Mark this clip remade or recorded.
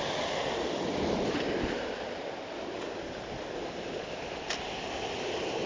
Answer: recorded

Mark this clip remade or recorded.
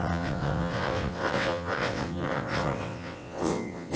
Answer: remade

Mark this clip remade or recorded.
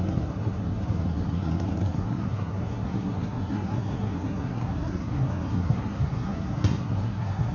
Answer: remade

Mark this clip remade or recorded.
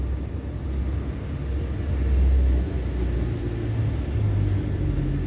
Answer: recorded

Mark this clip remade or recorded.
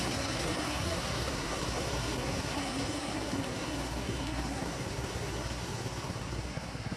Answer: remade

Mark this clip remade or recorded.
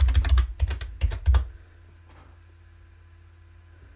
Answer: recorded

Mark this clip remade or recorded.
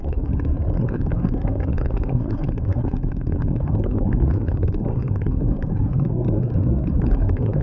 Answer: remade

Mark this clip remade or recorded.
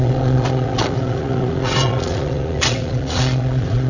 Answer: remade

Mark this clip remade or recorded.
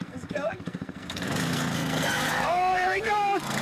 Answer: remade